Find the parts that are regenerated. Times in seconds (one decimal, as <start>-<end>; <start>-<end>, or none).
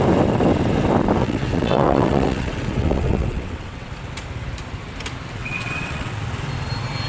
1.2-3.9; 5.4-6.2